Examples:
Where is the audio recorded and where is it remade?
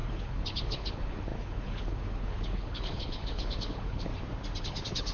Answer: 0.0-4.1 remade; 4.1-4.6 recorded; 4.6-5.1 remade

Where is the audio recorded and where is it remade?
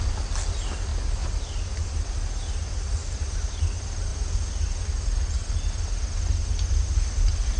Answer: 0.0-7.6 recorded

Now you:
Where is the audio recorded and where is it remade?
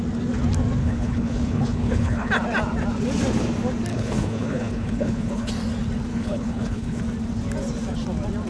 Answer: 0.0-0.8 recorded; 0.8-2.3 remade; 2.3-3.9 recorded; 3.9-5.5 remade; 5.5-6.1 recorded; 6.1-7.0 remade; 7.0-8.5 recorded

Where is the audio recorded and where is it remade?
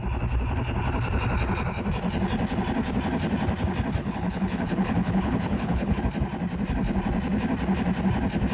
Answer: 0.0-4.0 recorded; 4.0-6.0 remade; 6.0-8.5 recorded